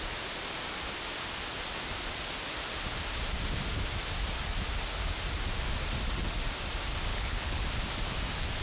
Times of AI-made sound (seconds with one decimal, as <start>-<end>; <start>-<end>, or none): 7.1-7.6